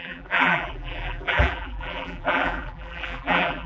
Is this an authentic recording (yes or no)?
no